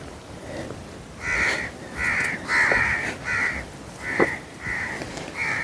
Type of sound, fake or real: real